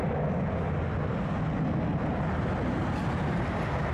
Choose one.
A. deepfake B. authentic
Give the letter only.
B